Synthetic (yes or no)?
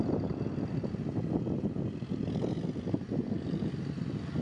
no